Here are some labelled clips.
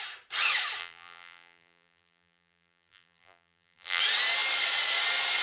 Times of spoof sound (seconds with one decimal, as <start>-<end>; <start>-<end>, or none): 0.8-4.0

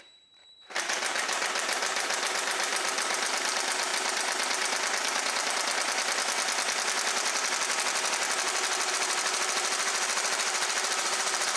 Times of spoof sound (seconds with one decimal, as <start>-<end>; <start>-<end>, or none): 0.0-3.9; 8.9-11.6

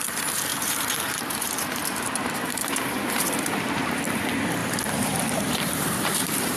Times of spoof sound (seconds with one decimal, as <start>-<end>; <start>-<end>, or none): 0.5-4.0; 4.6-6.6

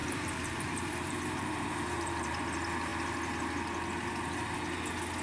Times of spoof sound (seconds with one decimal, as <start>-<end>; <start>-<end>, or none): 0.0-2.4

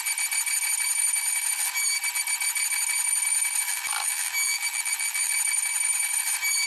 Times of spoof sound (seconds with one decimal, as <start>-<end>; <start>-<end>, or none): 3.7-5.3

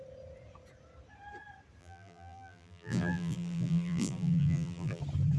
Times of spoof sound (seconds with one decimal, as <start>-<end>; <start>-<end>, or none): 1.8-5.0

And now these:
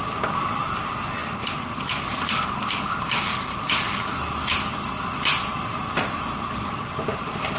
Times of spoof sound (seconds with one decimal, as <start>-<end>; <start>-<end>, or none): 0.0-7.6

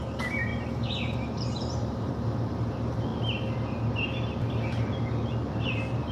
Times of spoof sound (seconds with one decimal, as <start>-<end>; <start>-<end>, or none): 0.5-2.1